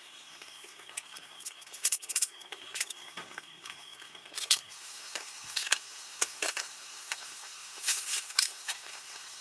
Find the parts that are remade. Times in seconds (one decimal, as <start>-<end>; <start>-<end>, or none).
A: 0.0-9.4